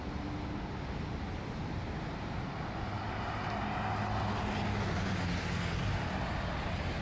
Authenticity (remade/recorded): recorded